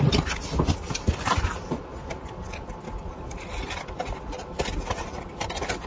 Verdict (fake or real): real